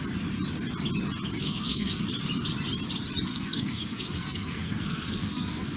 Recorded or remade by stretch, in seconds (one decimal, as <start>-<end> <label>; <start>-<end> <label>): 0.0-1.4 recorded; 1.4-2.0 remade; 2.0-3.3 recorded; 3.3-5.8 remade